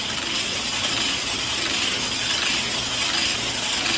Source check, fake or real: real